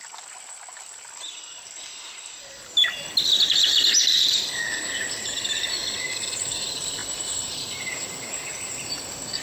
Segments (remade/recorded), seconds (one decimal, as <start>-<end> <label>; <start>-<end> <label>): 0.0-7.0 recorded; 7.0-7.9 remade; 7.9-9.4 recorded